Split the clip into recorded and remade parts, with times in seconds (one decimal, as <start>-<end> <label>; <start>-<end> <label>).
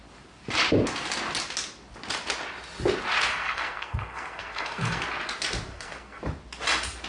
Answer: 0.0-3.3 recorded; 3.3-5.0 remade; 5.0-5.7 recorded; 5.7-6.2 remade; 6.2-7.1 recorded